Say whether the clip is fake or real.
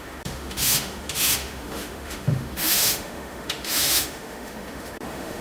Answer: fake